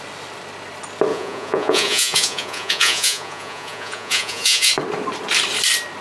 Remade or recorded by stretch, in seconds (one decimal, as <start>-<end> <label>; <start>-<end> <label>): 0.0-1.1 recorded; 1.1-4.7 remade; 4.7-6.0 recorded